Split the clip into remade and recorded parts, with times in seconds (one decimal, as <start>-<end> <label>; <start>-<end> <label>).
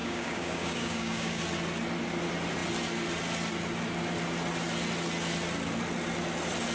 0.0-1.4 remade; 1.4-6.7 recorded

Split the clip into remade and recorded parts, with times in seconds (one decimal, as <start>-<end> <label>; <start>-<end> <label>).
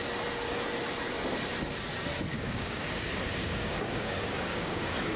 0.0-2.3 recorded; 2.3-5.2 remade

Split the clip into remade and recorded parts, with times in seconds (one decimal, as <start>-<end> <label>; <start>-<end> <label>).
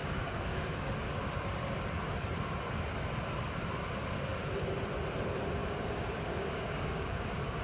0.0-0.8 remade; 0.8-5.6 recorded; 5.6-7.6 remade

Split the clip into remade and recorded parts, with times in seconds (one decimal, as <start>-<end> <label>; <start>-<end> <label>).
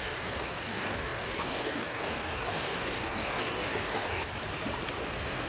0.0-4.2 remade; 4.2-5.0 recorded; 5.0-5.5 remade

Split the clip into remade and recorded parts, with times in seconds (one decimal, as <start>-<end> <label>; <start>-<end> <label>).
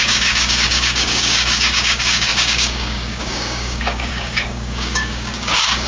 0.0-5.9 remade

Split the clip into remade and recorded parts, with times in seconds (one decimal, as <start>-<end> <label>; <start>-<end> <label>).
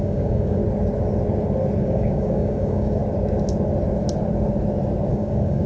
0.0-0.6 remade; 0.6-1.8 recorded; 1.8-3.0 remade; 3.0-5.1 recorded; 5.1-5.7 remade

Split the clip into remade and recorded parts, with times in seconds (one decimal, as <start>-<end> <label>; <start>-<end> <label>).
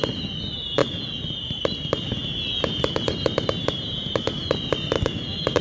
0.0-5.6 recorded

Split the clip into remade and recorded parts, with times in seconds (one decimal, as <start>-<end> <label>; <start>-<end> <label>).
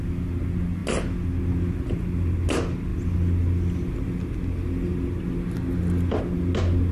0.0-6.9 recorded